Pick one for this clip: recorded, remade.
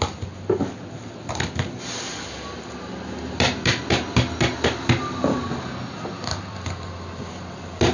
recorded